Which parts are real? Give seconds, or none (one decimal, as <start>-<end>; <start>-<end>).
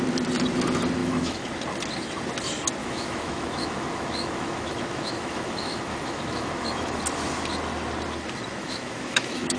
0.0-1.0; 1.5-2.8; 7.0-8.6